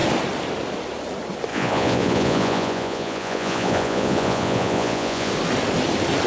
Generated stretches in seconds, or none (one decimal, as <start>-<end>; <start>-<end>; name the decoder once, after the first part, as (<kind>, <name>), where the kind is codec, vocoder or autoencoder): 1.5-5.3 (vocoder, Vocos)